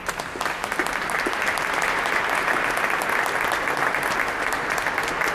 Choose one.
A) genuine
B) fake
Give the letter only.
A